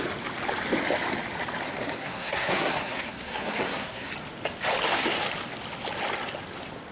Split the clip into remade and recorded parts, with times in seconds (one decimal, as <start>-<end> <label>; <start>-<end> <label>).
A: 0.0-2.0 recorded; 2.0-4.1 remade; 4.1-6.9 recorded